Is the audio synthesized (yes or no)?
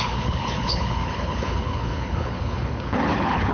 yes